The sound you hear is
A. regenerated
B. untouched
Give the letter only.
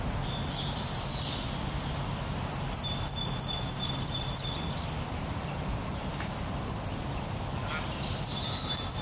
B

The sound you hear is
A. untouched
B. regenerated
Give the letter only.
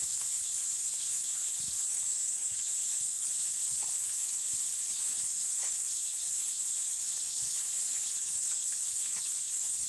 B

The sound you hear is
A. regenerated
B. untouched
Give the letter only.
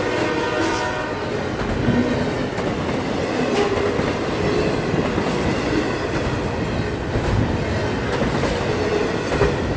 B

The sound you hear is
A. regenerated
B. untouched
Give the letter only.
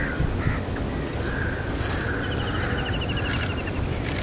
B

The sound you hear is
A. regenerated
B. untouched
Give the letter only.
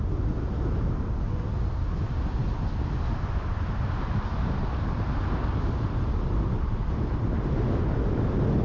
B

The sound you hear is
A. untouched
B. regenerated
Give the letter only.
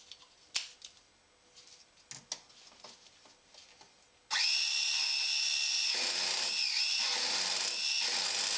A